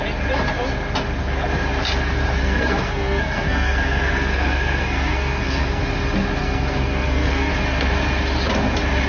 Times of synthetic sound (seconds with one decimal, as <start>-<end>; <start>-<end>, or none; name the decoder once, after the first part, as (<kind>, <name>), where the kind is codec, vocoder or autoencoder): 2.4-5.8 (codec, SNAC); 6.4-7.5